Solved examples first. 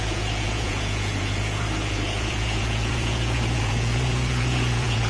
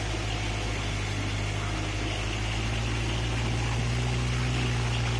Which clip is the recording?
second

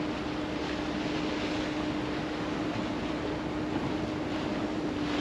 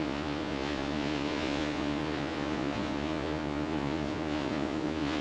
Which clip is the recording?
first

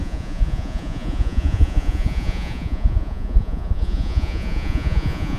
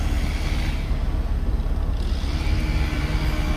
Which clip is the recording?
second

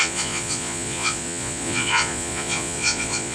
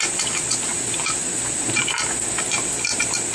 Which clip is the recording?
second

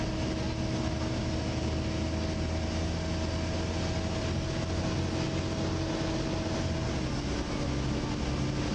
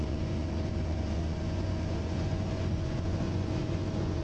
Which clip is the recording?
first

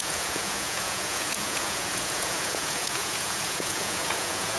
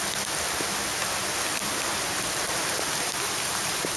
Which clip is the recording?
second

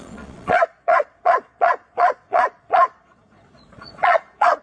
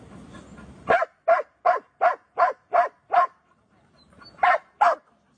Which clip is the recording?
second